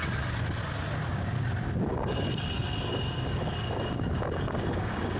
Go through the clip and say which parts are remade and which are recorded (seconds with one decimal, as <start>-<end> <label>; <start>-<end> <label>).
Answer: 0.0-1.9 recorded; 1.9-5.2 remade